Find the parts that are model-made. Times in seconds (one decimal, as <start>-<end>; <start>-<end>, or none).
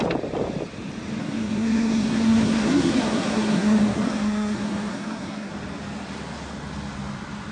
1.2-5.5